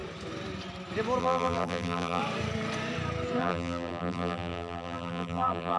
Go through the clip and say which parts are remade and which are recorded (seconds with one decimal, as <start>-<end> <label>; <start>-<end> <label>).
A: 0.0-1.2 recorded; 1.2-2.2 remade; 2.2-3.4 recorded; 3.4-5.8 remade